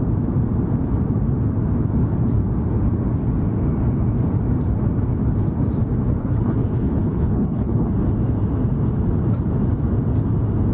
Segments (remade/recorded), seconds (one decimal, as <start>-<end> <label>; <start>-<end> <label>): 0.0-6.2 recorded; 6.2-7.9 remade; 7.9-10.7 recorded